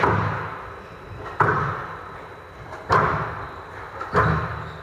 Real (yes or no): yes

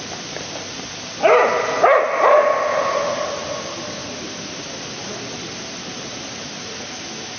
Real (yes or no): yes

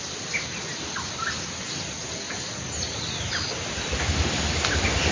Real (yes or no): yes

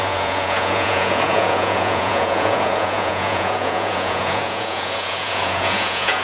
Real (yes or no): no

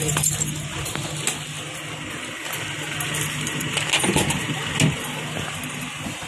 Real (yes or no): yes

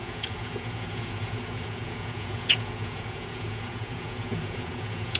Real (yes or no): no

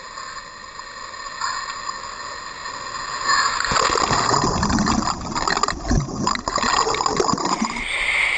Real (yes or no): yes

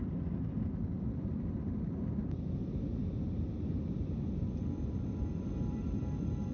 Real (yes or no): yes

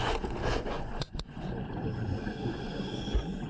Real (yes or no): no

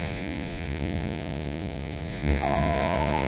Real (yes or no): no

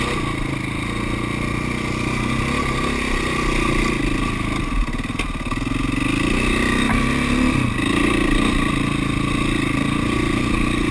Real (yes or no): yes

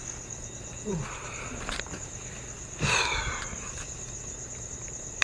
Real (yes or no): yes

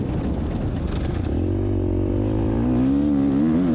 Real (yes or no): yes